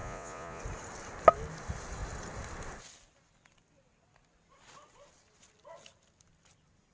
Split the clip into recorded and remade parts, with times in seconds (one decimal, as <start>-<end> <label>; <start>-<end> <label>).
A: 0.0-0.6 remade; 0.6-6.9 recorded